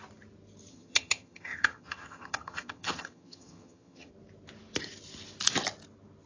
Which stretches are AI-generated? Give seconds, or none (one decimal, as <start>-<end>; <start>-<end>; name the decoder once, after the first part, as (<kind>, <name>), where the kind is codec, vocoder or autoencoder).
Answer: 0.7-4.1 (vocoder, HiFi-GAN)